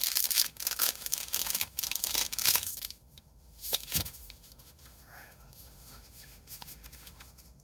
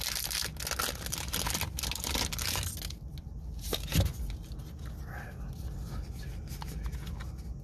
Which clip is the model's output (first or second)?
first